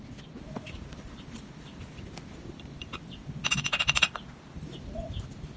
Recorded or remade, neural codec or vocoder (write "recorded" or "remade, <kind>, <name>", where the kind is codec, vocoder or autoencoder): recorded